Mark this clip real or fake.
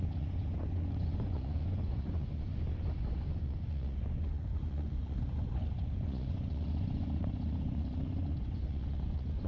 fake